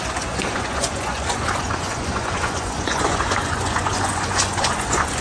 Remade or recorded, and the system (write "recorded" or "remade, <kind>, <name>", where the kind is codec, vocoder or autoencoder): remade, vocoder, Vocos